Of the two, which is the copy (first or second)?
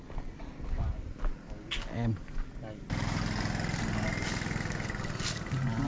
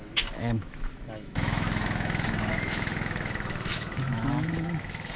second